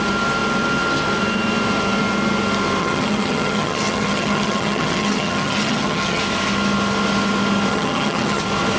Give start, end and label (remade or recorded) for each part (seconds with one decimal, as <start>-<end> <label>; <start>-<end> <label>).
0.0-2.8 recorded; 2.8-6.2 remade; 6.2-7.7 recorded; 7.7-8.4 remade; 8.4-8.8 recorded